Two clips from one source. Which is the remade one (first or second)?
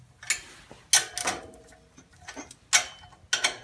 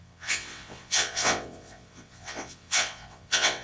second